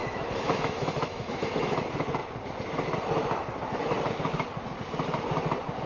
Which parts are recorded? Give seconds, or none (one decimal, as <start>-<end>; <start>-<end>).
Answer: 1.8-5.9